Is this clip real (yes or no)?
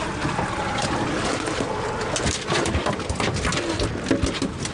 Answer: yes